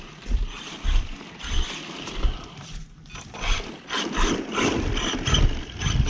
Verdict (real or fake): real